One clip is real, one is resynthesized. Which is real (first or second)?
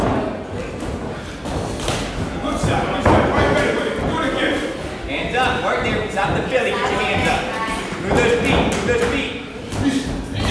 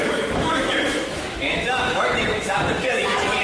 first